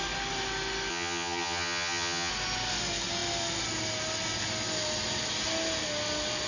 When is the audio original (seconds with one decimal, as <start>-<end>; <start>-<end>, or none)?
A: 0.0-0.9; 2.3-6.5